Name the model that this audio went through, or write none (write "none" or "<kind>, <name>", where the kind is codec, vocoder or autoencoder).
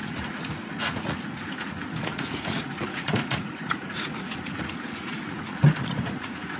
vocoder, Vocos